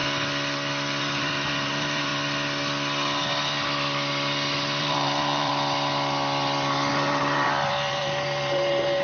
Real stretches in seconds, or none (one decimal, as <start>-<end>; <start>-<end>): 0.0-1.0; 2.1-4.8; 5.5-6.9